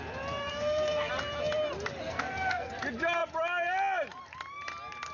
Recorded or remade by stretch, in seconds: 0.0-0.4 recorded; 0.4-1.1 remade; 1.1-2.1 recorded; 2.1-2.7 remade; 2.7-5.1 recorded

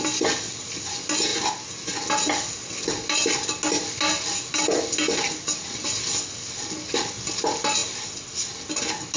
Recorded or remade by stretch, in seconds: 0.0-9.2 recorded

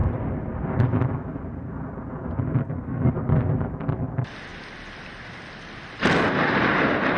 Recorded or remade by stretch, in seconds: 0.0-2.6 recorded; 2.6-3.1 remade; 3.1-7.2 recorded

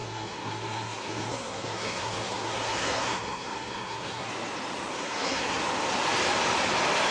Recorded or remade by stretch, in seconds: 0.0-4.3 remade; 4.3-4.9 recorded; 4.9-5.6 remade; 5.6-7.1 recorded

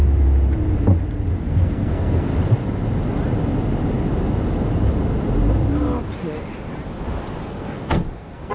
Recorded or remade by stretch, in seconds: 0.0-1.4 recorded; 1.4-2.3 remade; 2.3-7.4 recorded; 7.4-8.5 remade

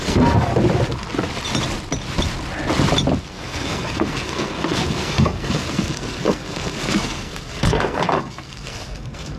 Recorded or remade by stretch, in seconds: 0.0-0.5 remade; 0.5-3.2 recorded; 3.2-9.4 remade